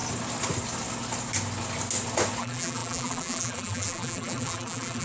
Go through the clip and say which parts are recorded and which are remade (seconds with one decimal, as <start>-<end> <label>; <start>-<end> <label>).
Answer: 0.0-2.4 recorded; 2.4-5.0 remade